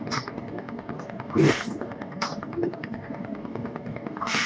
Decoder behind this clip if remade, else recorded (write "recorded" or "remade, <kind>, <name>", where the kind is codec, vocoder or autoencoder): remade, codec, DAC